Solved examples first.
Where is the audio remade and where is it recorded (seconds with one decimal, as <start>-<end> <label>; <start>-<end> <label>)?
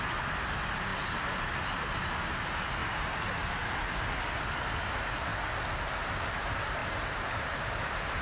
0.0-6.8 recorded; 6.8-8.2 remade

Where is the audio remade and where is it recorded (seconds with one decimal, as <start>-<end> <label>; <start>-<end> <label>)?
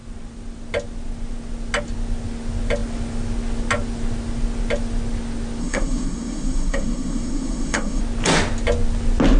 0.0-5.6 recorded; 5.6-8.0 remade; 8.0-9.4 recorded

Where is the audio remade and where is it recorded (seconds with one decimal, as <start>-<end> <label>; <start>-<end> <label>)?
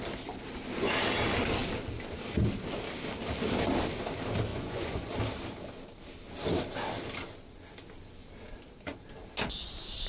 0.0-4.5 recorded; 4.5-5.1 remade; 5.1-10.1 recorded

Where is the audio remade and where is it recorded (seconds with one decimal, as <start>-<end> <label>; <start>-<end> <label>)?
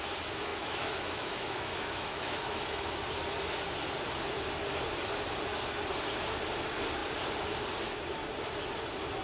0.0-0.5 recorded; 0.5-2.9 remade; 2.9-9.2 recorded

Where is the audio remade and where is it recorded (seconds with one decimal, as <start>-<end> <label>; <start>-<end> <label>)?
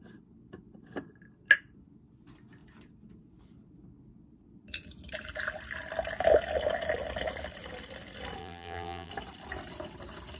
0.0-8.4 recorded; 8.4-9.1 remade; 9.1-10.4 recorded